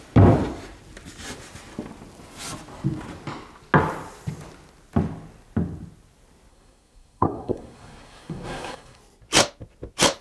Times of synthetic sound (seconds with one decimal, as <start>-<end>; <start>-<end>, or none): 6.5-9.0